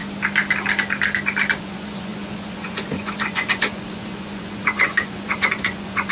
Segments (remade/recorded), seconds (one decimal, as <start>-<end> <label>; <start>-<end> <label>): 0.0-1.6 recorded; 1.6-6.1 remade